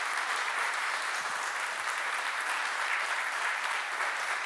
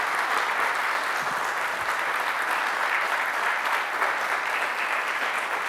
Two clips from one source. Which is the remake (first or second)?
first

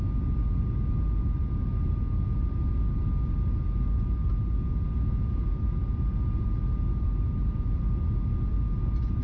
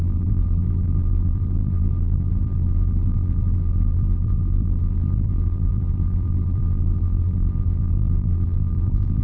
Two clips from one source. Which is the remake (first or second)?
second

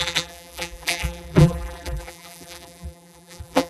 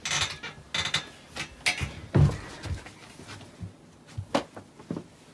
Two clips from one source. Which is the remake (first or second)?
first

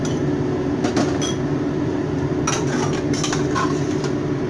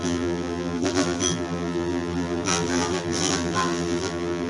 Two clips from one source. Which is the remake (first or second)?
second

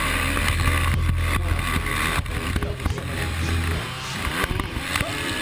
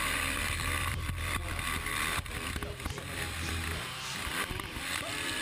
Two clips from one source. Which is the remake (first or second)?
second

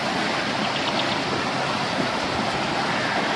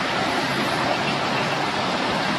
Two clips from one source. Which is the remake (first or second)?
second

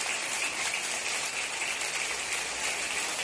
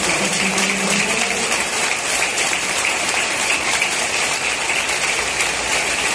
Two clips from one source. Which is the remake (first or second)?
second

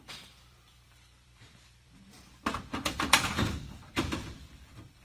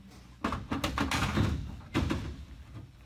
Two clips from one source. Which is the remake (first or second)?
first